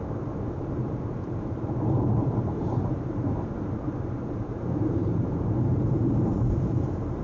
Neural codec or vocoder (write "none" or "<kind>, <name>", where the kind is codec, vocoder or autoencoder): vocoder, BigVGAN v2